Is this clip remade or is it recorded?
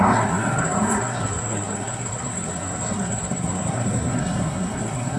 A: remade